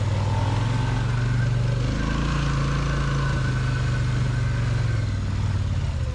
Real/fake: real